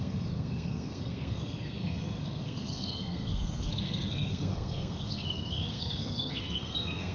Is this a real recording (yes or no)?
no